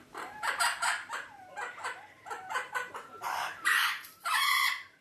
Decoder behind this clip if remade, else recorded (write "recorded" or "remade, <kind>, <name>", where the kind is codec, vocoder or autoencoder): remade, vocoder, BigVGAN v2